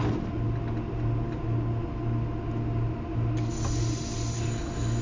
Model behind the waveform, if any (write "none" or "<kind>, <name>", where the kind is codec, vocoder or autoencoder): none